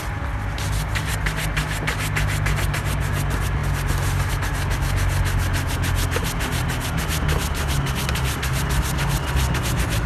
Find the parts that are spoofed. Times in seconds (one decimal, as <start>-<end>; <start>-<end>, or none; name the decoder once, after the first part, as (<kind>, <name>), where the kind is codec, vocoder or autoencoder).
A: none

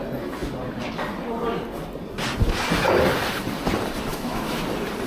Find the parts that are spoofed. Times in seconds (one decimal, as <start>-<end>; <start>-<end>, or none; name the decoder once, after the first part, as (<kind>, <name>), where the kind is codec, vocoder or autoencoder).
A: 4.1-4.6 (autoencoder, DAC-VAE)

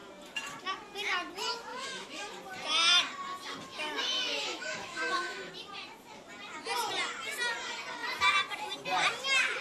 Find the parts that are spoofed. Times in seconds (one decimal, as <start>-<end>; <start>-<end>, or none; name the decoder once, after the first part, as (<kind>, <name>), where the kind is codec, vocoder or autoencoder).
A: 1.7-2.3 (autoencoder, DAC-VAE); 3.7-5.5

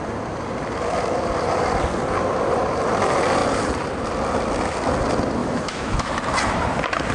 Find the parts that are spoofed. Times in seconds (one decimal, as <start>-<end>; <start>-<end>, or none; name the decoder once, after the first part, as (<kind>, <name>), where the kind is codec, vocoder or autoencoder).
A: 5.4-6.1 (autoencoder, DAC-VAE)

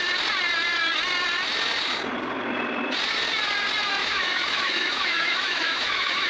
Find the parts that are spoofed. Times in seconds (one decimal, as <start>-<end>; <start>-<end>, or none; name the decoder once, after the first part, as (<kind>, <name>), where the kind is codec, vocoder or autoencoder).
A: 4.0-6.3 (autoencoder, DAC-VAE)

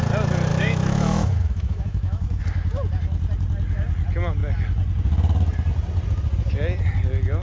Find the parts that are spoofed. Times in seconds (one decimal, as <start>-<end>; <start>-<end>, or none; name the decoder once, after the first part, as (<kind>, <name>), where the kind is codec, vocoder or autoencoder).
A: 0.5-2.4 (autoencoder, DAC-VAE)

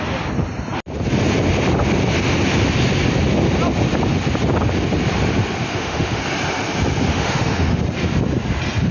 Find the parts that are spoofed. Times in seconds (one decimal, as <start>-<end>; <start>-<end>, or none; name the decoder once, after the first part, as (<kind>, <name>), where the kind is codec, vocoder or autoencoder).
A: 5.7-6.2 (autoencoder, DAC-VAE); 7.1-7.8

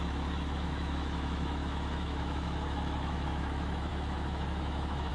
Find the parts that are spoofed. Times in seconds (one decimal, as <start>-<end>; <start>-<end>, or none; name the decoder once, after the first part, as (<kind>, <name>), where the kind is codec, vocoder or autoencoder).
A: 0.0-5.1 (autoencoder, DAC-VAE)